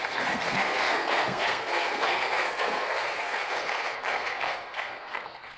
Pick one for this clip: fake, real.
fake